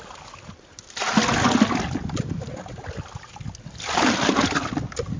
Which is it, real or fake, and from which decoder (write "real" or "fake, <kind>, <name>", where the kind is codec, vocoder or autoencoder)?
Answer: real